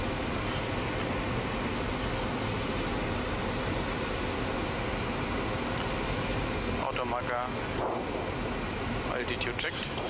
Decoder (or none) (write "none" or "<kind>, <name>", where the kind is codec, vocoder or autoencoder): none